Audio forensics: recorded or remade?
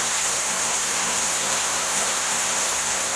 remade